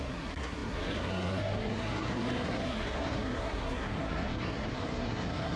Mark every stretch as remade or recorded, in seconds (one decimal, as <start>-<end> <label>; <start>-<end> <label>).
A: 0.0-5.6 remade